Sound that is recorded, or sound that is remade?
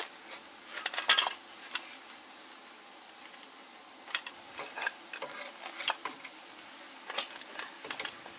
recorded